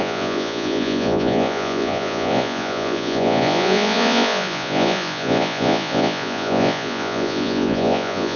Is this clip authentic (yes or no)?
no